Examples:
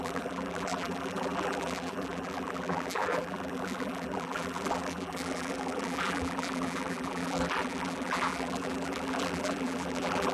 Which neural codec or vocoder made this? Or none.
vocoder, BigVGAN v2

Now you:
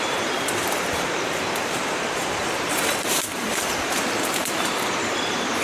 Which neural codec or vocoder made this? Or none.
vocoder, BigVGAN v2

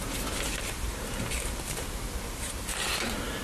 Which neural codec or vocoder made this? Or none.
vocoder, BigVGAN v2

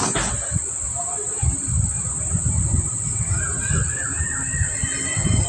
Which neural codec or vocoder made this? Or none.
none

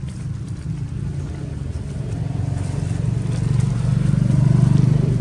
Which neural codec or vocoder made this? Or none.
none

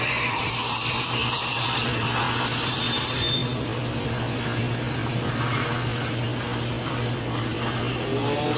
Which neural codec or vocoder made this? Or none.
none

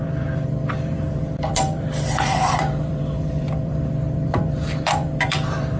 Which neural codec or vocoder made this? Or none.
vocoder, BigVGAN v2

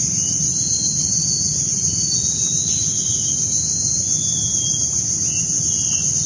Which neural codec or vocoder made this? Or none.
none